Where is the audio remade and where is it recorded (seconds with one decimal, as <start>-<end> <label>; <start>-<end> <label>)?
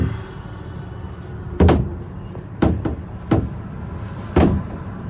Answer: 0.0-1.4 recorded; 1.4-2.9 remade; 2.9-4.6 recorded; 4.6-5.1 remade